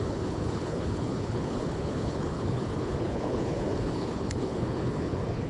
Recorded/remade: remade